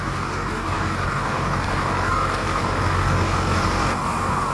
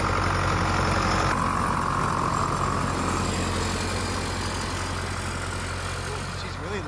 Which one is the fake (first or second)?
first